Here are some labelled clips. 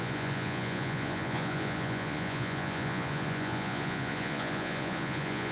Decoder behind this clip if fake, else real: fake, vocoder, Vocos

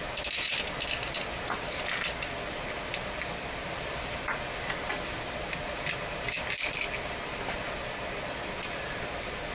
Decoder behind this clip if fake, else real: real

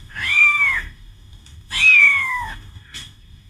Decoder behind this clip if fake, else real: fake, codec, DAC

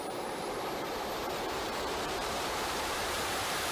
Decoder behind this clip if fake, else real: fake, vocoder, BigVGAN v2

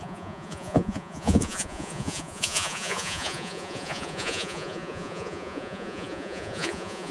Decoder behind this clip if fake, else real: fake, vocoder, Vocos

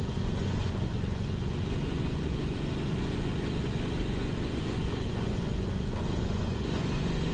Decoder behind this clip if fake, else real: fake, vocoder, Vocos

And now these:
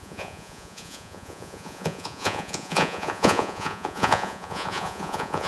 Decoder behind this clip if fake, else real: fake, vocoder, Vocos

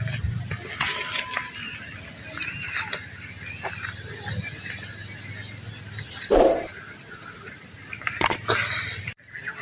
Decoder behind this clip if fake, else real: real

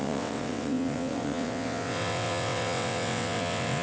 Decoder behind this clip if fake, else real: fake, vocoder, WaveNeXt